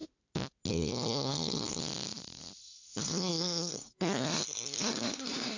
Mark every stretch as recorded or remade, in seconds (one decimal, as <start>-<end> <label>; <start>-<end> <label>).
0.0-0.7 recorded; 0.7-1.8 remade; 1.8-2.6 recorded; 2.6-5.6 remade